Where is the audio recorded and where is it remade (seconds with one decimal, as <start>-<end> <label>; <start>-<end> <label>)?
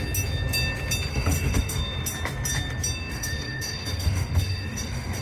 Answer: 0.0-1.1 recorded; 1.1-1.8 remade; 1.8-3.1 recorded; 3.1-5.2 remade